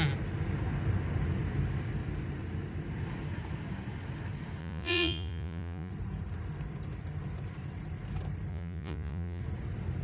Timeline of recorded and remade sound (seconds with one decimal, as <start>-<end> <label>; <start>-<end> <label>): 0.0-4.6 recorded; 4.6-5.9 remade; 5.9-8.5 recorded; 8.5-9.4 remade; 9.4-10.0 recorded